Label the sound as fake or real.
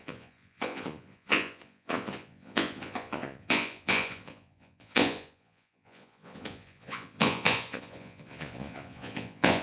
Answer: fake